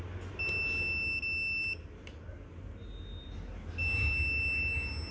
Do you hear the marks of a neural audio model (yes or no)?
no